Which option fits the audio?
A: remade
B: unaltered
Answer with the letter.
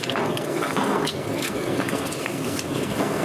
A